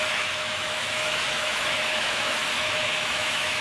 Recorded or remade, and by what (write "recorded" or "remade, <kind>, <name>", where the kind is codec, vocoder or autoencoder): remade, autoencoder, DAC-VAE